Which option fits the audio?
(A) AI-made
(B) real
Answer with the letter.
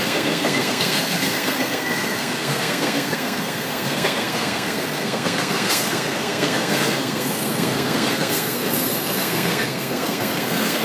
A